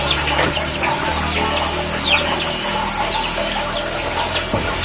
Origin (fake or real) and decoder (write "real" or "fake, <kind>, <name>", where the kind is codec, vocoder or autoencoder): real